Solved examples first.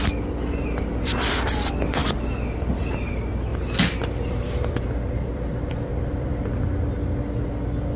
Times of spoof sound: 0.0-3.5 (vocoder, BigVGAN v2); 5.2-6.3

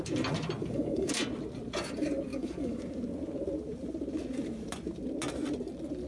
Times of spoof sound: 0.6-1.1 (codec, DAC); 2.3-2.8

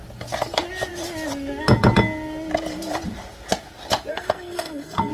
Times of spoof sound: 4.1-5.1 (codec, SNAC)